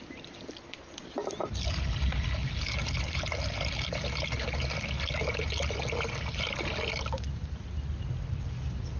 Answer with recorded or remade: recorded